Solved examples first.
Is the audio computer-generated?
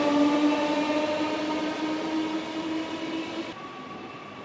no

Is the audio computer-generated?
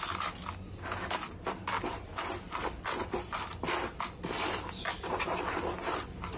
no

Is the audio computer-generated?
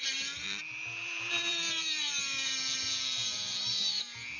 yes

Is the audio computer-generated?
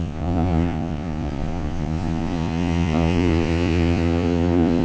yes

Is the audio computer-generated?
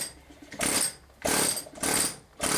no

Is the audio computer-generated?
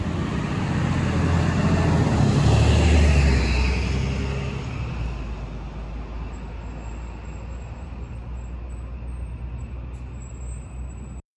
no